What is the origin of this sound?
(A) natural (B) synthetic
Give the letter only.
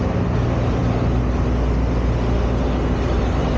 A